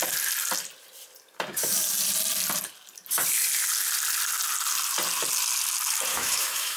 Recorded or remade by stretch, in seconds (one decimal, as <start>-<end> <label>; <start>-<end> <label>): 0.0-6.1 recorded; 6.1-6.8 remade